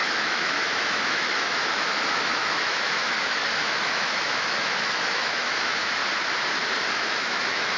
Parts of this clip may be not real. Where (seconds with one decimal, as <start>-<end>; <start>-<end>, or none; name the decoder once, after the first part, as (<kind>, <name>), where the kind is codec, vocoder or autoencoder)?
0.0-6.0 (autoencoder, DAC-VAE); 6.9-7.8